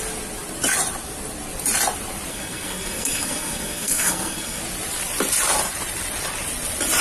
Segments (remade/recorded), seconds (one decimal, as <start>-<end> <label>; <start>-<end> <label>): 0.0-2.3 recorded; 2.3-4.6 remade; 4.6-7.0 recorded